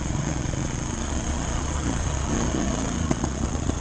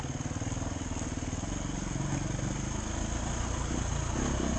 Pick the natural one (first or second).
second